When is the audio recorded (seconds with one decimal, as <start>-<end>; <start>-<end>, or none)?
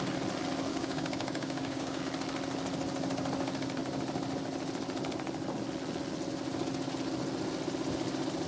0.0-0.7; 2.0-8.5